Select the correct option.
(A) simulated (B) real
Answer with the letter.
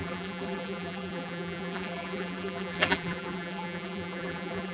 A